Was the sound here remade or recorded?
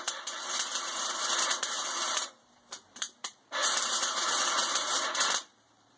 remade